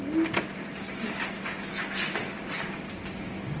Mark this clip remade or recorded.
recorded